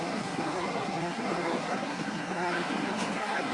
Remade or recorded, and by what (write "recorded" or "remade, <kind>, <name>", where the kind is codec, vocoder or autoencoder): remade, codec, SNAC